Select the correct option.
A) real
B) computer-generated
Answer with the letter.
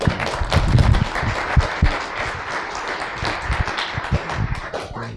A